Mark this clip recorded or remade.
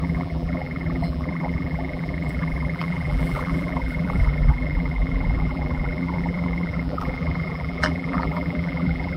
remade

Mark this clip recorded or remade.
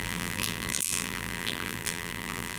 remade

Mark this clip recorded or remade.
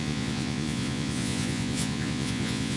remade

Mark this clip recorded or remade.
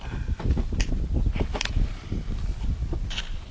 recorded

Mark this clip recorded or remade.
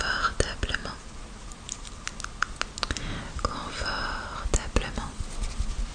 recorded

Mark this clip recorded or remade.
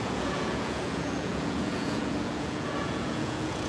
remade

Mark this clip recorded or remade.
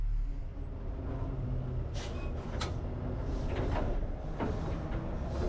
recorded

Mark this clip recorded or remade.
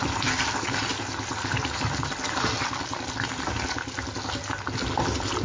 recorded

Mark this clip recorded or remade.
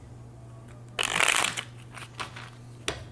recorded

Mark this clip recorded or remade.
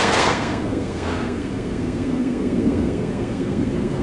remade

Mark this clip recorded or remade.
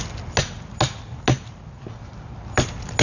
recorded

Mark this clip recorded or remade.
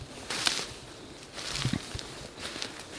recorded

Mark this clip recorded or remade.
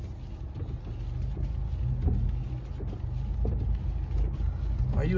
recorded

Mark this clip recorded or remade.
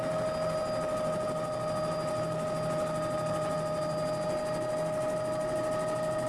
recorded